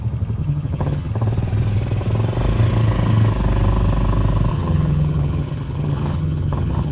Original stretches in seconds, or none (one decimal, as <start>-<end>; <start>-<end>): 0.0-0.4; 1.1-4.5